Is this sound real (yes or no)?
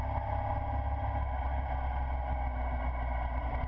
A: yes